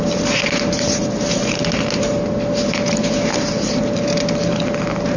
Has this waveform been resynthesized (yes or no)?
no